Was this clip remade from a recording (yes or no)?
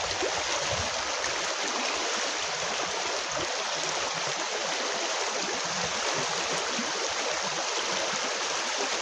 no